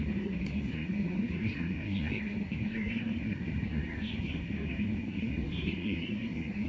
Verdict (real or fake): fake